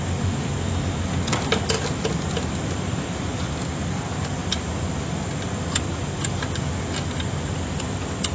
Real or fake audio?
real